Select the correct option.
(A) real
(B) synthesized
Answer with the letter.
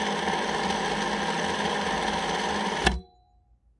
A